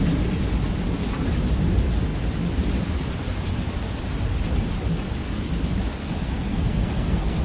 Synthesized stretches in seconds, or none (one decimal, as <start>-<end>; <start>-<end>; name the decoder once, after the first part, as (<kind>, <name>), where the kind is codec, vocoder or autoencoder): 6.0-7.4 (codec, SNAC)